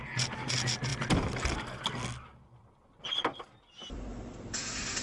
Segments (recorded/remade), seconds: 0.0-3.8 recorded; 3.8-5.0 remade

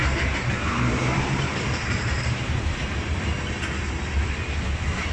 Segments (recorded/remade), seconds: 0.0-3.1 remade; 3.1-5.1 recorded